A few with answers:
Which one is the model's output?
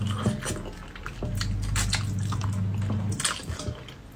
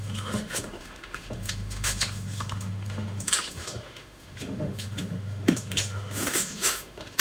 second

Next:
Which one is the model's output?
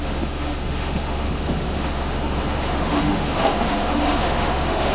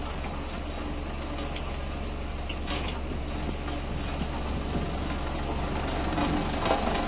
first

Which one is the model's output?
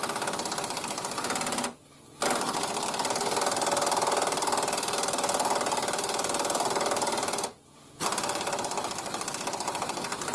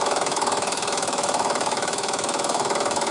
second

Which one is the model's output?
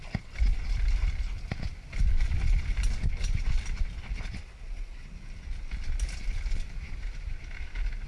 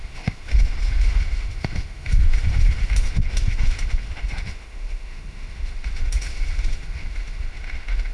second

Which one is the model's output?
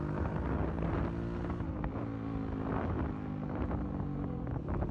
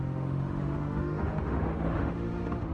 second